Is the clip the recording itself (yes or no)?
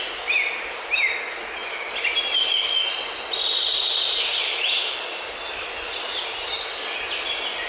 yes